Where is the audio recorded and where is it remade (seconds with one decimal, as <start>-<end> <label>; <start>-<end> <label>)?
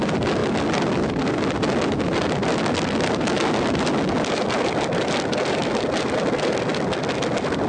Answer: 0.0-7.7 recorded